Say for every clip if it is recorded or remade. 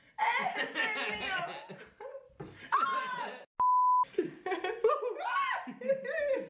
recorded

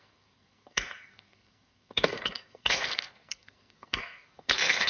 remade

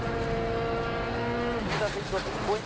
recorded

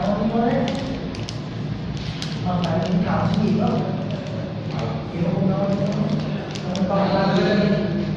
recorded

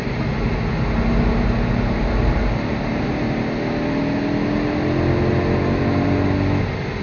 recorded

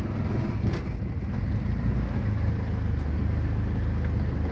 recorded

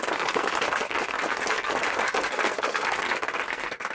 remade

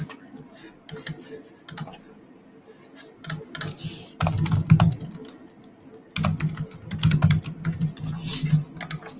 recorded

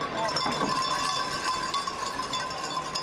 recorded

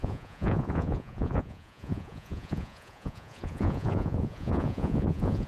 remade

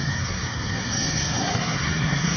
remade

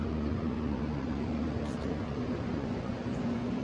remade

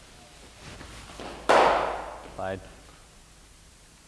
recorded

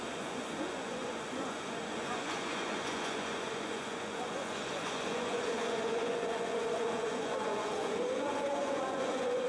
remade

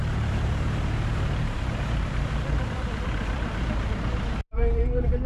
remade